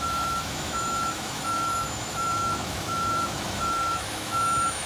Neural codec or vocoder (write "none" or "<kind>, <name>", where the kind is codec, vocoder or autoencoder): autoencoder, DAC-VAE